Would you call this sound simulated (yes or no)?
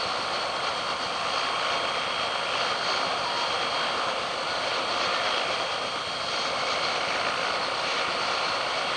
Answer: no